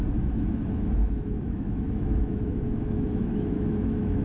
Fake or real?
fake